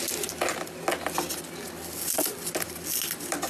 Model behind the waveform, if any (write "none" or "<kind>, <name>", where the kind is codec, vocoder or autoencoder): none